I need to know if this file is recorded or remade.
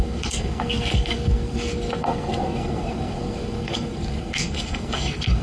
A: remade